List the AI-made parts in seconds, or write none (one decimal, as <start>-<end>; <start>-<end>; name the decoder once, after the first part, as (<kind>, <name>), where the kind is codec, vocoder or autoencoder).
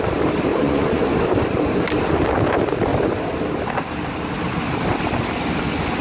0.5-1.1 (vocoder, Vocos)